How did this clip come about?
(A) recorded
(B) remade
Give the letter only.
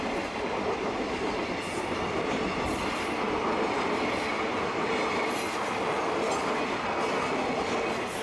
A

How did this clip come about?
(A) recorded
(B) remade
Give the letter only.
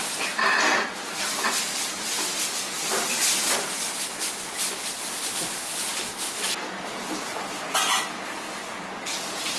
A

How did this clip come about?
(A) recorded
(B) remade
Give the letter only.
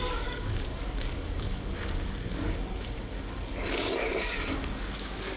B